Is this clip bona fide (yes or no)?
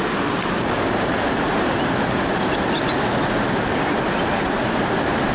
yes